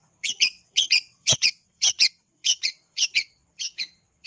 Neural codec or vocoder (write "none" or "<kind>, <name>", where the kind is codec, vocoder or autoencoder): vocoder, WaveNeXt